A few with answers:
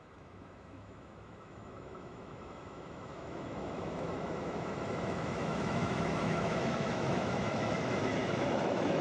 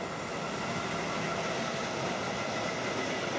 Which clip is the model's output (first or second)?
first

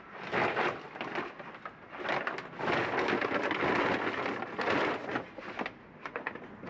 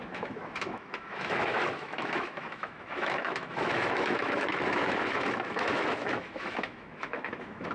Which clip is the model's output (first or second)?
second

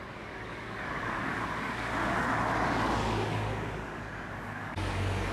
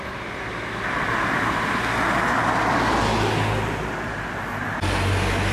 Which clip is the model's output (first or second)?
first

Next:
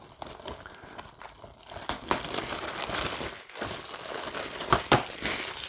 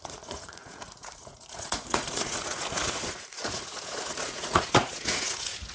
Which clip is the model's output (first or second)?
second